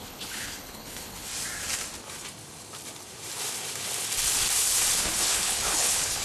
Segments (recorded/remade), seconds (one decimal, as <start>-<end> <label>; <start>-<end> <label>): 0.0-1.3 remade; 1.3-5.0 recorded; 5.0-6.2 remade